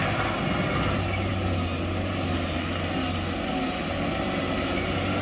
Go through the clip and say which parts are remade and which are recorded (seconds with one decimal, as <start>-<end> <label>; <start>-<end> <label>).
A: 0.0-5.2 recorded

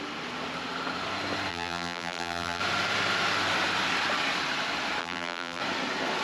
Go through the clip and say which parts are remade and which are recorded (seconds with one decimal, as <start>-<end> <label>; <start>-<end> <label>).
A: 0.0-1.5 recorded; 1.5-2.6 remade; 2.6-5.0 recorded; 5.0-5.6 remade; 5.6-6.2 recorded

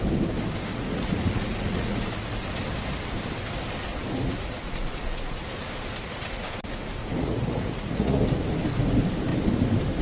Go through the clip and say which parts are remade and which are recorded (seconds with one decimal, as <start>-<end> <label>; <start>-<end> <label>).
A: 0.0-0.7 recorded; 0.7-2.4 remade; 2.4-3.9 recorded; 3.9-5.5 remade; 5.5-7.0 recorded; 7.0-8.2 remade; 8.2-10.0 recorded